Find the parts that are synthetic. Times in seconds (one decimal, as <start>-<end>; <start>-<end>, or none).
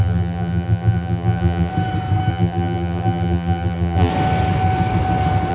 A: 0.0-1.7; 2.3-4.1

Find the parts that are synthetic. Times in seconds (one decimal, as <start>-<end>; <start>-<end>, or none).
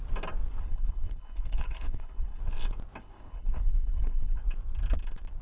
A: 0.6-2.4; 3.0-4.4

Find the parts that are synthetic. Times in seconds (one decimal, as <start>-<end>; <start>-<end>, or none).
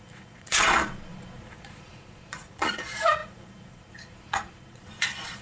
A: 0.0-5.4